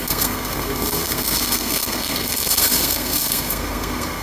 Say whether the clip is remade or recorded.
remade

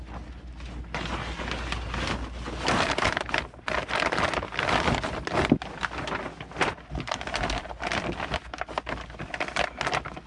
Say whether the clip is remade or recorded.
recorded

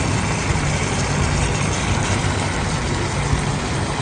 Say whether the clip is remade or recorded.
recorded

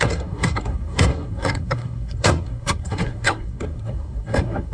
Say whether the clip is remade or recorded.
remade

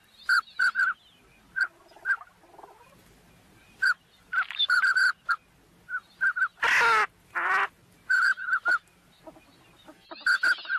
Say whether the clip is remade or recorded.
recorded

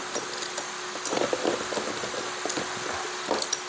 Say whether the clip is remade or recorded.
recorded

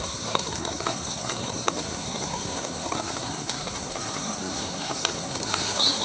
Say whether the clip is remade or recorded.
remade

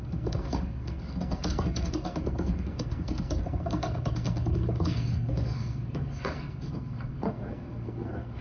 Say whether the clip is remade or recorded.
remade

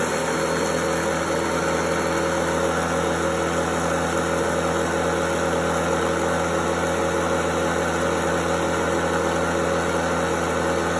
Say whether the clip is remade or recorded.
recorded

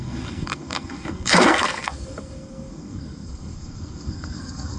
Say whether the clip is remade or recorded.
remade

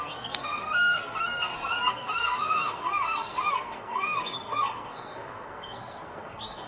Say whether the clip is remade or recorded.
remade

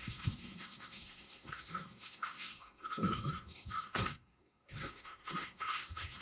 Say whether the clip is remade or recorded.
remade